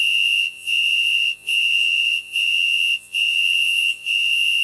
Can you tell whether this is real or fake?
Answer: fake